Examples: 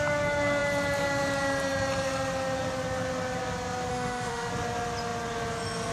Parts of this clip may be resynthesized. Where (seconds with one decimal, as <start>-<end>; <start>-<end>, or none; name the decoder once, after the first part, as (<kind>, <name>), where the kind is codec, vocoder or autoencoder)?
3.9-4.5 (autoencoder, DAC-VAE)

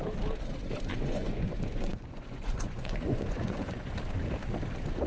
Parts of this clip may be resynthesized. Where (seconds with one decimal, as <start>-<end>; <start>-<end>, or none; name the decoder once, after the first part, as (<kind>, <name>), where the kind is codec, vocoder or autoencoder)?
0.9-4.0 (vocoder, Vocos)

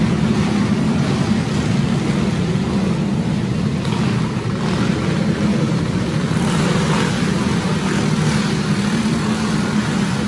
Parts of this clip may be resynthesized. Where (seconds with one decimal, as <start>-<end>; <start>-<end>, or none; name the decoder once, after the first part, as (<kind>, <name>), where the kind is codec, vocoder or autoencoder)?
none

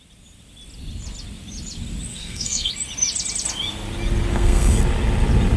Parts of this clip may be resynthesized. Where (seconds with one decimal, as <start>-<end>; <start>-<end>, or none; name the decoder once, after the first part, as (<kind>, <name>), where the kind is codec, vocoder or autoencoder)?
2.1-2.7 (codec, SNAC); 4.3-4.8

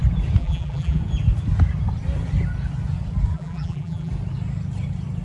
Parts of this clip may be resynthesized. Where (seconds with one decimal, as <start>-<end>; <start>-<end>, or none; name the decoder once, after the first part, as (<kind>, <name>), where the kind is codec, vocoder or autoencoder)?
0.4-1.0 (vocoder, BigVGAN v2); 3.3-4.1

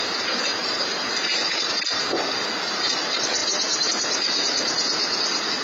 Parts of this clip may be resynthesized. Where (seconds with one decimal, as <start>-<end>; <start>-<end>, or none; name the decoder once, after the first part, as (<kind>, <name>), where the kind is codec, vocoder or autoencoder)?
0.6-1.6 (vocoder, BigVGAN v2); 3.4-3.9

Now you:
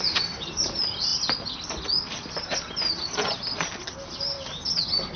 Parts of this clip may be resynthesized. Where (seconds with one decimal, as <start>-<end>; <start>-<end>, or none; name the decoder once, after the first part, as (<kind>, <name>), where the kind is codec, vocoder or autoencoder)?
none